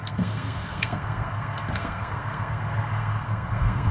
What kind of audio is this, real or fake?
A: fake